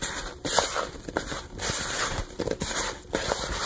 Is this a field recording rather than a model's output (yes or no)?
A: yes